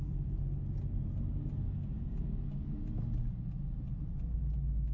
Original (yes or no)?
yes